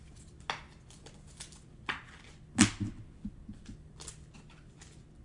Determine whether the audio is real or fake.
real